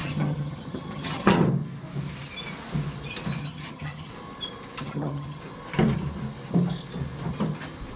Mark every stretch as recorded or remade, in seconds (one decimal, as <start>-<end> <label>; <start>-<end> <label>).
0.0-1.4 remade; 1.4-3.4 recorded; 3.4-4.1 remade; 4.1-4.8 recorded; 4.8-5.4 remade; 5.4-8.0 recorded